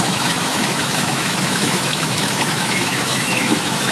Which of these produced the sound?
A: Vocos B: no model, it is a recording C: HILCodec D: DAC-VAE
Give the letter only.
D